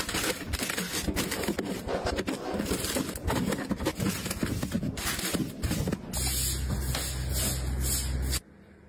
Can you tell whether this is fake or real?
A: real